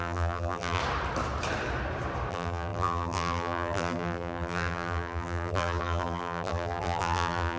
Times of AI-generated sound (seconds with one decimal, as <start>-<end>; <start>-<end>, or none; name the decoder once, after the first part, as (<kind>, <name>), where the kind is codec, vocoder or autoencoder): 0.0-0.8 (vocoder, BigVGAN v2); 2.3-7.6